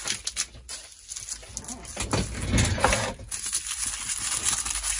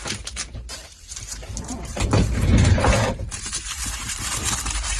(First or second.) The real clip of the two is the first